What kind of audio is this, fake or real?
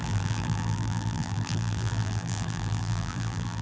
fake